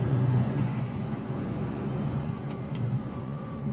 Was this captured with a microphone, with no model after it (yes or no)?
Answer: no